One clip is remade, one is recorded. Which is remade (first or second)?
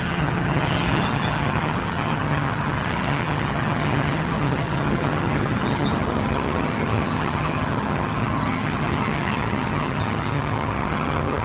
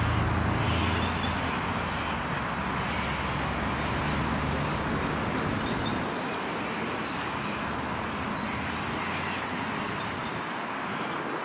first